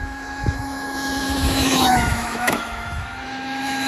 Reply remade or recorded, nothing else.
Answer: remade